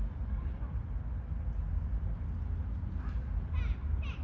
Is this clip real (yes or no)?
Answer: yes